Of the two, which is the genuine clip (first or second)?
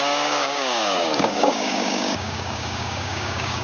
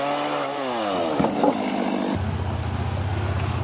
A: second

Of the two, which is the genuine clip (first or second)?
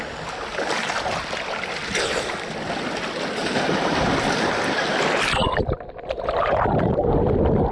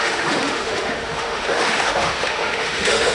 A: first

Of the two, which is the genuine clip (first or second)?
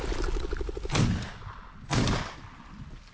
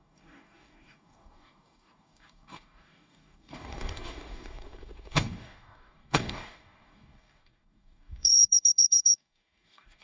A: first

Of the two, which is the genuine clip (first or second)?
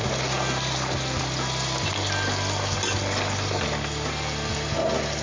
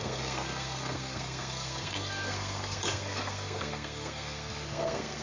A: first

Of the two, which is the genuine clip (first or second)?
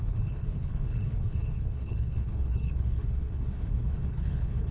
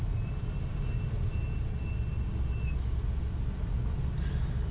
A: second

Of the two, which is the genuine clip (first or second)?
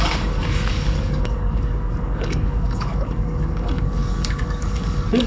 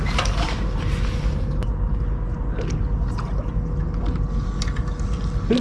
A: second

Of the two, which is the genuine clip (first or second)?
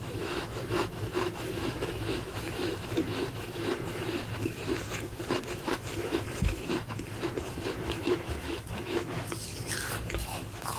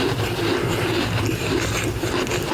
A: second